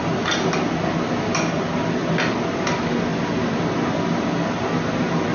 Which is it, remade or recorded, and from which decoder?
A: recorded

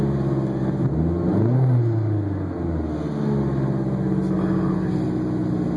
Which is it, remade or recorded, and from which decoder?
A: recorded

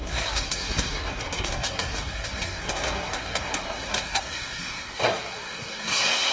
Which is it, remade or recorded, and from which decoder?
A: remade, codec, SNAC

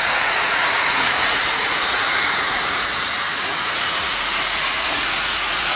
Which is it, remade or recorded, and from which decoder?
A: remade, vocoder, Vocos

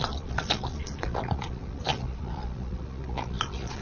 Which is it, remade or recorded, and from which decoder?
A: remade, vocoder, Vocos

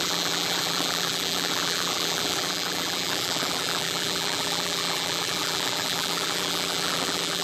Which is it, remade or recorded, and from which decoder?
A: remade, vocoder, BigVGAN v2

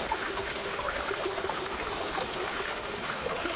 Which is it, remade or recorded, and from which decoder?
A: remade, autoencoder, DAC-VAE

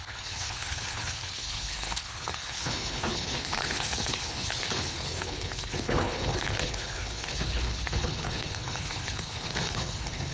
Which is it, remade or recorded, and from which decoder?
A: remade, codec, HILCodec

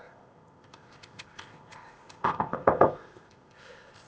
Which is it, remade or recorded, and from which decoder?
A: remade, codec, ZipCodec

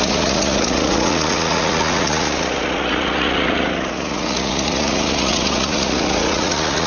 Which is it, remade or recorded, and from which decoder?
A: remade, vocoder, Vocos